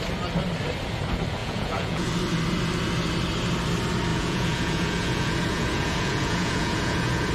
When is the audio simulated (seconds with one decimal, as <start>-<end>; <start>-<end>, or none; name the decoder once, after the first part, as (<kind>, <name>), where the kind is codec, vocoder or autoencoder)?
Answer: 1.4-2.1 (vocoder, Vocos); 4.1-7.3